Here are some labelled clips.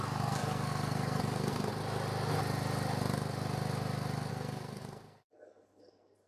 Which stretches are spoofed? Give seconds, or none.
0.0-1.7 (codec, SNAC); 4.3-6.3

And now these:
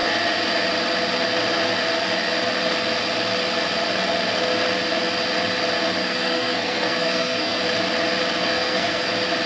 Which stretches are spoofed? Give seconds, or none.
6.0-7.6 (codec, SNAC); 8.4-9.1

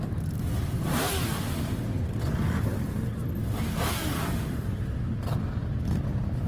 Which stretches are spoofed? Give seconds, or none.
none